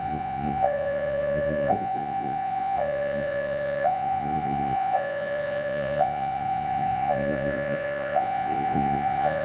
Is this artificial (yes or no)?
yes